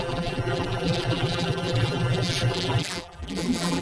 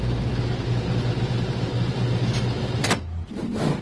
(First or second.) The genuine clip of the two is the second